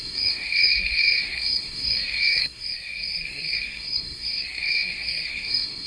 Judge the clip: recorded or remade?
remade